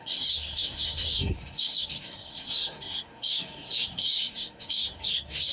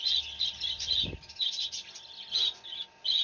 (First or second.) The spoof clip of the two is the first